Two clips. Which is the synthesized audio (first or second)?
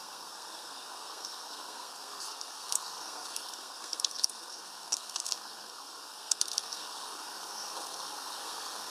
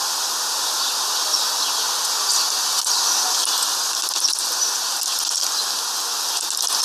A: first